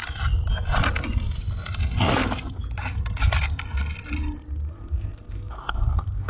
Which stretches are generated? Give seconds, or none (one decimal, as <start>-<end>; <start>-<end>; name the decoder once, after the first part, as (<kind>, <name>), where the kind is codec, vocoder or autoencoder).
4.8-6.3 (codec, SNAC)